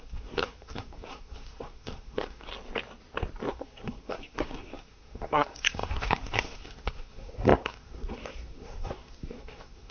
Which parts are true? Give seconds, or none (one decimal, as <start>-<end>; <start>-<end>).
2.5-3.5